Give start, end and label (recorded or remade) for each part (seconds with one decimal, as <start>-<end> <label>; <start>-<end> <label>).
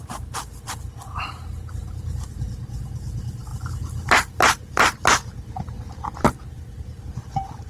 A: 0.0-7.7 recorded